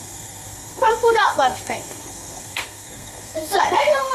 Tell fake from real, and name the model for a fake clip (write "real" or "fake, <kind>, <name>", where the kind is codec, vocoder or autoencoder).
fake, codec, SNAC